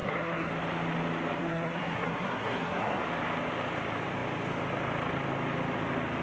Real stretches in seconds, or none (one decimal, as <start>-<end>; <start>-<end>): 0.5-1.4; 3.0-6.2